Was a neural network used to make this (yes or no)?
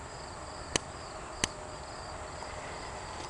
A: no